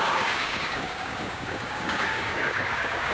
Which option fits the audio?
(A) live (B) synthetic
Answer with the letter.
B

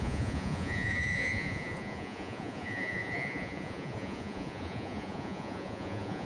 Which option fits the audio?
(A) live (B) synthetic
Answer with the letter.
B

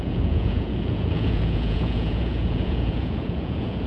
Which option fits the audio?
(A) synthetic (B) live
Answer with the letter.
A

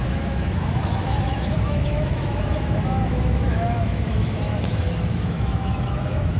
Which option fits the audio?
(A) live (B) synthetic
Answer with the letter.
B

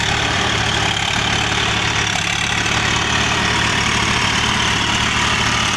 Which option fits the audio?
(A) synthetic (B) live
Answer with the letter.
A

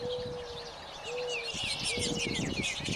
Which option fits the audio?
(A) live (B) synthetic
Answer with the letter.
A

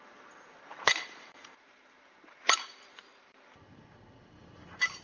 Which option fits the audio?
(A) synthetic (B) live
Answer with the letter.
A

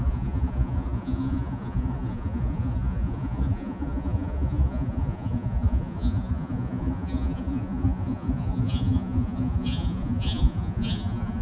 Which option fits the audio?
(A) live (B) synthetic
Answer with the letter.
B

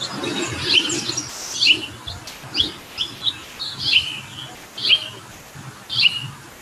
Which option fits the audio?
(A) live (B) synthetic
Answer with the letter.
A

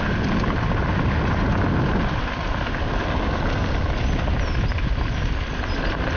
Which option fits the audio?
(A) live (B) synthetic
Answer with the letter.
A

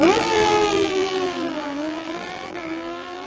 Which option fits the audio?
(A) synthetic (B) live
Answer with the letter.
A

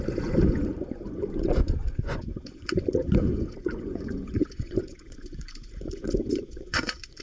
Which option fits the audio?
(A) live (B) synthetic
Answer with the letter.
B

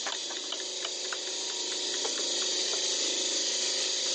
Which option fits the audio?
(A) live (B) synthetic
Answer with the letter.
A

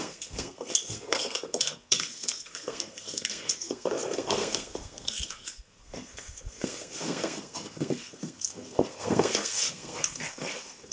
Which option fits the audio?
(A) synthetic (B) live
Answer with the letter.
A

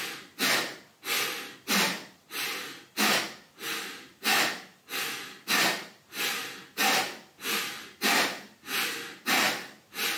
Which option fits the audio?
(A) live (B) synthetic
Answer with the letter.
A